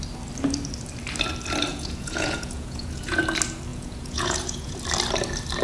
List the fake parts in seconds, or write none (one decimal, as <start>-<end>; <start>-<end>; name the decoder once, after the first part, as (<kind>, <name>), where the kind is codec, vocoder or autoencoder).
1.7-3.2 (vocoder, Vocos); 3.7-4.8